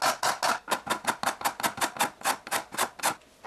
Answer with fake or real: real